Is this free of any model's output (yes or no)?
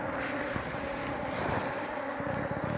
yes